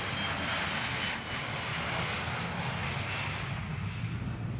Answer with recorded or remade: recorded